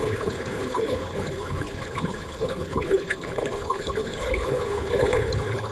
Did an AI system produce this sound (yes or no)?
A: yes